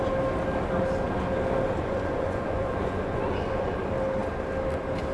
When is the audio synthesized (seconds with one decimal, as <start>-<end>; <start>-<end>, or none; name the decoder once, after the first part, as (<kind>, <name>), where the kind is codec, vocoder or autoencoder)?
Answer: 1.8-3.8 (vocoder, Vocos)